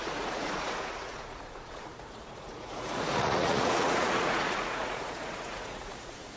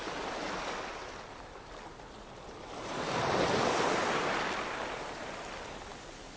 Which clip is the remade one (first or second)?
first